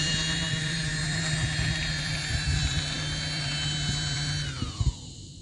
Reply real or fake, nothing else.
fake